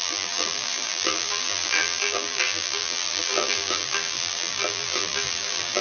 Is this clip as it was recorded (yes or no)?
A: no